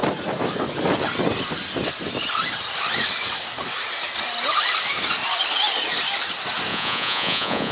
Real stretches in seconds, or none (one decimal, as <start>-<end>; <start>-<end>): 0.0-6.7

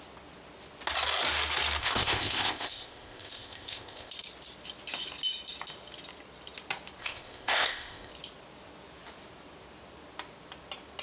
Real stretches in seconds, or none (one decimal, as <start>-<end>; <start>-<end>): 0.0-1.8; 4.1-7.0; 8.1-11.0

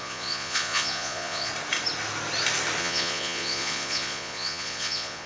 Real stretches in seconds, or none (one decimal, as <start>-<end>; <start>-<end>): 1.5-2.8

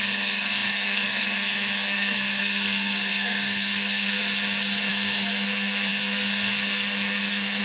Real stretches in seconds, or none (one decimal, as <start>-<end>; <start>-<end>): 4.2-4.9

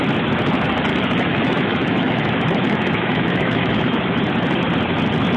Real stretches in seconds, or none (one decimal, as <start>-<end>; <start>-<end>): 0.0-0.9; 4.0-5.4